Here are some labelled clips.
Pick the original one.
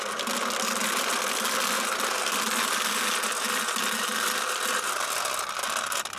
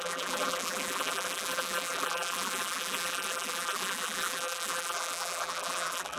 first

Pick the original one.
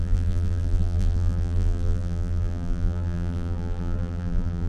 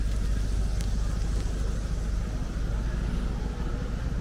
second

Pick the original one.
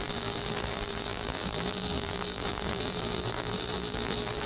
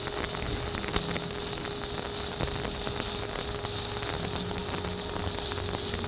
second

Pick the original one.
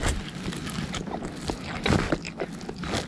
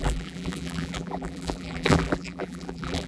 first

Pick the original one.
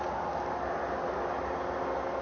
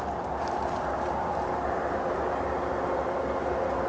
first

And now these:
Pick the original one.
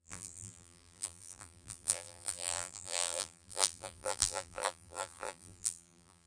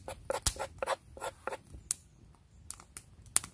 second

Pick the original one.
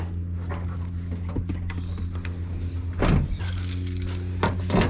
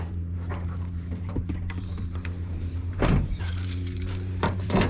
first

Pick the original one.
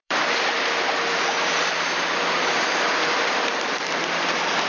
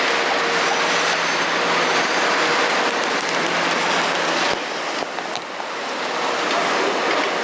second